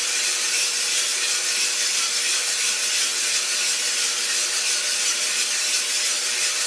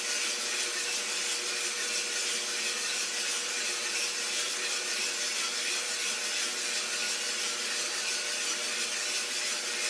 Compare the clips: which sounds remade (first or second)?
first